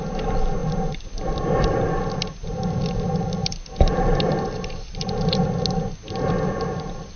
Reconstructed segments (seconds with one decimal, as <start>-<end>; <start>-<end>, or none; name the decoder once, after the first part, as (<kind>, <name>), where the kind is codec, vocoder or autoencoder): none